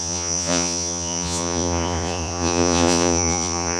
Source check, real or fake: fake